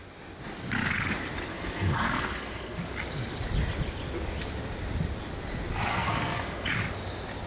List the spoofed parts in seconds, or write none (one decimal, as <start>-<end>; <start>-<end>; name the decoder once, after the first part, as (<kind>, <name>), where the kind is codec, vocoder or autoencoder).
1.5-2.8 (codec, SNAC); 5.9-6.7